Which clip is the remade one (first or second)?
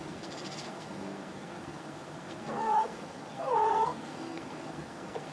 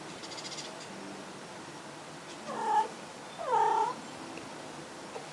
first